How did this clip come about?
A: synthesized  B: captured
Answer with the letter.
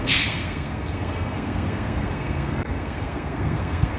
A